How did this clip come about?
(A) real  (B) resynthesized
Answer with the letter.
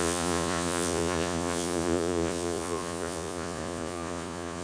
B